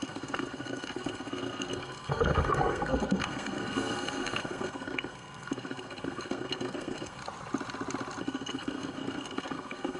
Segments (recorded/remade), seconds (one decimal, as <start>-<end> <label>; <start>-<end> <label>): 0.0-7.2 remade; 7.2-8.2 recorded; 8.2-10.0 remade